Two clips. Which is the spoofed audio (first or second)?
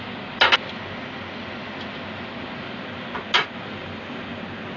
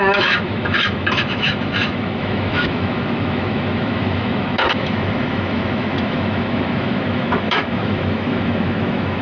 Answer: second